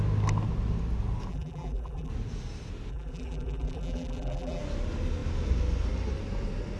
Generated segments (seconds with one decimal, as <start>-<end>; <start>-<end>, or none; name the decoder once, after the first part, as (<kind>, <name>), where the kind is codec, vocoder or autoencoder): 1.3-2.1 (vocoder, BigVGAN v2); 2.9-4.6

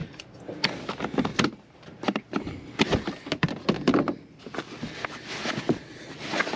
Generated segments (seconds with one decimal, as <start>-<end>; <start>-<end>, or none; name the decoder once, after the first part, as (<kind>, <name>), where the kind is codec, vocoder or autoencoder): 0.0-0.5 (vocoder, BigVGAN v2); 1.3-2.5

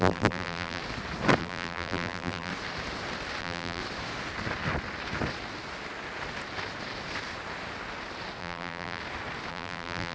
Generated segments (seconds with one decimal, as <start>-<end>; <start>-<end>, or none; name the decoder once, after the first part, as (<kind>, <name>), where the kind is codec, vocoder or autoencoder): 0.0-0.8 (vocoder, BigVGAN v2); 1.4-2.5; 3.4-3.8; 8.4-9.0; 9.5-10.1

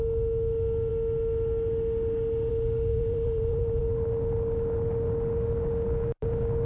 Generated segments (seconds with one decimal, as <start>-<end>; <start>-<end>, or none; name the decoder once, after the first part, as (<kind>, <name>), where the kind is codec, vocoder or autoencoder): 2.9-3.8 (vocoder, BigVGAN v2)

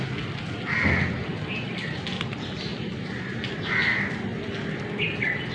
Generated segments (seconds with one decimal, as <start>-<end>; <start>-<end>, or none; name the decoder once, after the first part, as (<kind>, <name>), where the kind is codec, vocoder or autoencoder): 1.3-1.9 (vocoder, BigVGAN v2)

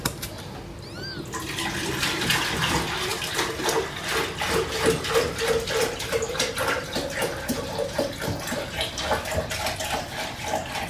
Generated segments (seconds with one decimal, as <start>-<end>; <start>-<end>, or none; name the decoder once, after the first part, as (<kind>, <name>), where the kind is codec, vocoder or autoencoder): none

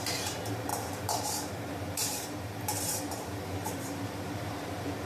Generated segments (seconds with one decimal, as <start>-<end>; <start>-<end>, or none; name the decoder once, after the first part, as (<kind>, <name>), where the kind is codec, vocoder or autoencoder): 0.0-5.1 (vocoder, BigVGAN v2)